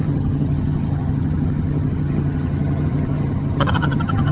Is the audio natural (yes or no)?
no